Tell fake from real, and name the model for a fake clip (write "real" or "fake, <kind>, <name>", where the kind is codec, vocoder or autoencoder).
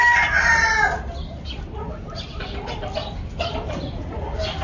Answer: real